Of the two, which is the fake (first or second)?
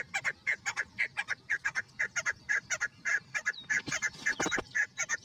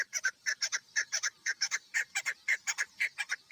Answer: second